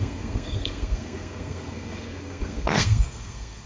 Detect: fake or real fake